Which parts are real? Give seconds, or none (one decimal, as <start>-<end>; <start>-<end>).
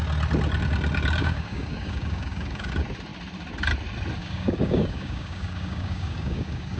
0.0-1.2; 2.7-4.2